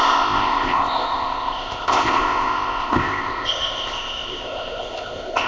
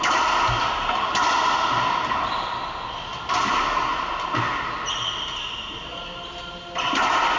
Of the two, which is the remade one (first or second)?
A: first